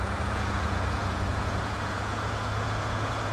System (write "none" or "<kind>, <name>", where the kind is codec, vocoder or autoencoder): vocoder, Vocos